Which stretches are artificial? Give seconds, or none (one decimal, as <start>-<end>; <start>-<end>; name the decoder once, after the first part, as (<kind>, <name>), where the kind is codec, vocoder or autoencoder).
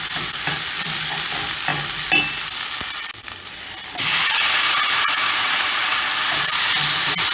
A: 4.1-6.1 (vocoder, Vocos)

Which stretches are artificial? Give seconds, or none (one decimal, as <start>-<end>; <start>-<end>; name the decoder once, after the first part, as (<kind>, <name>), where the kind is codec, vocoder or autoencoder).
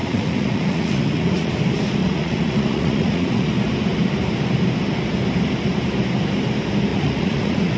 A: 0.0-1.5 (vocoder, Vocos); 2.0-3.5; 6.9-7.8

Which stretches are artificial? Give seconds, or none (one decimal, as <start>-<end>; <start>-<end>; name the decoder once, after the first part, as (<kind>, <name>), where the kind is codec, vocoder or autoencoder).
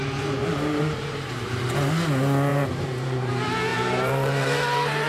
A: 0.0-1.6 (vocoder, BigVGAN v2); 2.5-3.3; 3.7-5.1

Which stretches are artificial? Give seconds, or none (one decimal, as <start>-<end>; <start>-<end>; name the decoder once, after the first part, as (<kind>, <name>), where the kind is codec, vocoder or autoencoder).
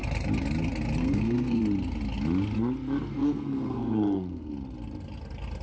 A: 1.0-1.6 (codec, SNAC); 3.2-4.5